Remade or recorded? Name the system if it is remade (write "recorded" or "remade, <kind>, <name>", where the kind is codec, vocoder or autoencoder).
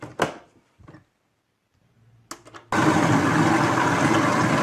recorded